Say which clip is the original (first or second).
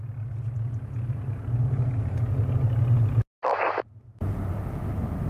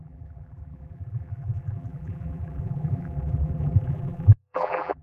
first